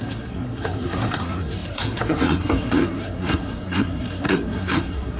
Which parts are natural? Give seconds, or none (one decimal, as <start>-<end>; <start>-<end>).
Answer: none